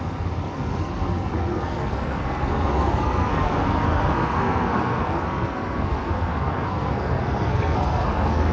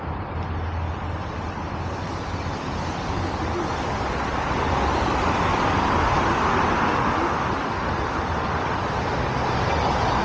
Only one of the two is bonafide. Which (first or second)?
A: second